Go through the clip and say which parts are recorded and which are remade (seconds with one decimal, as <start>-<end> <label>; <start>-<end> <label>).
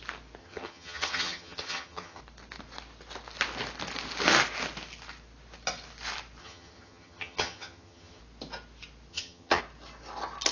0.0-0.4 recorded; 0.4-2.2 remade; 2.2-6.4 recorded; 6.4-8.2 remade; 8.2-9.1 recorded; 9.1-9.6 remade; 9.6-10.5 recorded